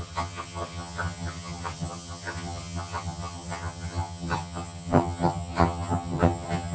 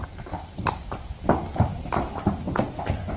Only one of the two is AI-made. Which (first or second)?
first